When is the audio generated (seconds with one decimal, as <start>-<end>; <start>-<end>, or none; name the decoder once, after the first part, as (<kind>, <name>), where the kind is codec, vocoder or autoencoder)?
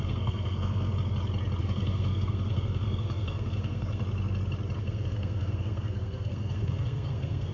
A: 0.0-0.9 (codec, SNAC); 1.6-4.0; 4.8-7.5